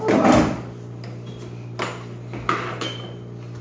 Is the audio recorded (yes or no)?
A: yes